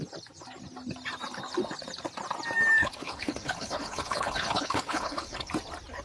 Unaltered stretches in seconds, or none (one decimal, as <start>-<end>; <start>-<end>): 0.0-2.8; 5.5-6.0